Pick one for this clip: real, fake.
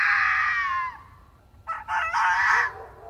real